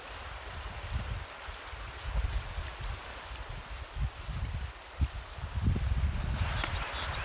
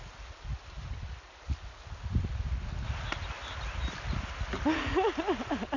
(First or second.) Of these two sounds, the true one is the second